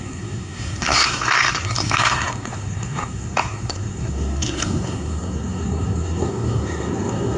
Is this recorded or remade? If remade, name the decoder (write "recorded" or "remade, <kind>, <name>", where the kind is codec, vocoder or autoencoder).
remade, codec, SNAC